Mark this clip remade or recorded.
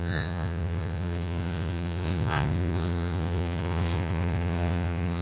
remade